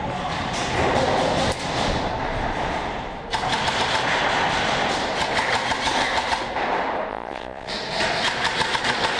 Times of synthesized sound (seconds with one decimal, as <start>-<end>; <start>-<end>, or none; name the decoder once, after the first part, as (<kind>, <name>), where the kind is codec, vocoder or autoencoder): 7.1-7.7 (vocoder, Vocos)